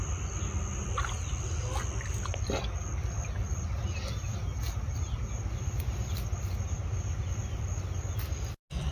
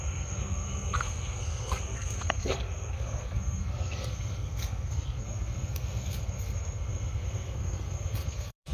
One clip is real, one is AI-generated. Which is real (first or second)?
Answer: first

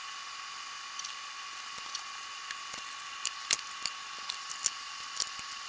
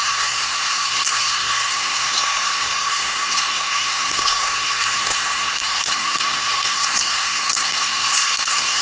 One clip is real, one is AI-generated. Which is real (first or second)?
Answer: first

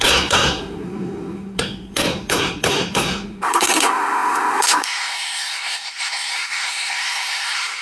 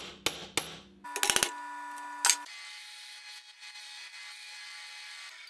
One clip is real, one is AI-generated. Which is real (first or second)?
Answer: second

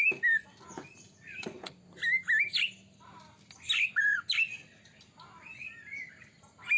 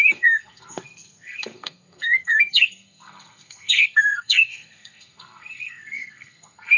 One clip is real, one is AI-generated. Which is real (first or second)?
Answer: first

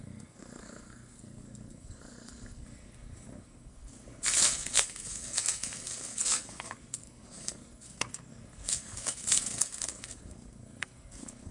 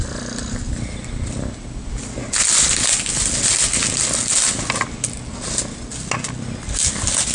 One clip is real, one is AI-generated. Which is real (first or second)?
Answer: second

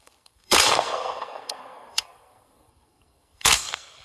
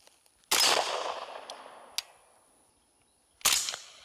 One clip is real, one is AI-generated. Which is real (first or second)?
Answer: second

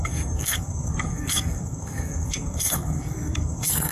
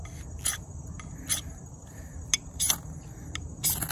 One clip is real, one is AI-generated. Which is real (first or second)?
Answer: second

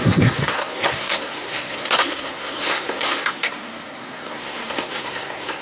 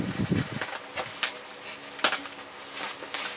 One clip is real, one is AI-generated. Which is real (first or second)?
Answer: second